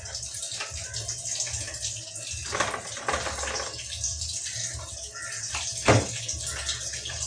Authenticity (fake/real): real